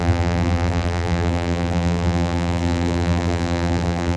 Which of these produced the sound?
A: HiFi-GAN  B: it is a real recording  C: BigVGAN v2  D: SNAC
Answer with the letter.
C